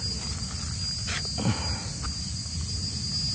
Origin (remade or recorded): recorded